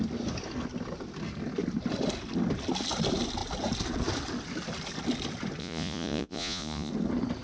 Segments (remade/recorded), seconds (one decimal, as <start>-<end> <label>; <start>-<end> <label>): 0.0-5.6 recorded; 5.6-6.9 remade; 6.9-7.4 recorded